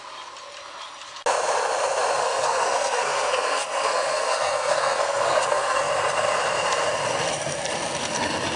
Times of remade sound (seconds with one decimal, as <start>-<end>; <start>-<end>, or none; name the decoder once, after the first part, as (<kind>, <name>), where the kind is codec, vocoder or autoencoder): 2.2-5.9 (codec, SNAC)